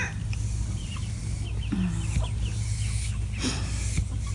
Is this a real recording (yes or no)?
yes